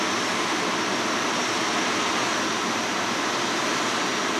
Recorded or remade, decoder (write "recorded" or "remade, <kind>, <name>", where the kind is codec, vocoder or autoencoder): recorded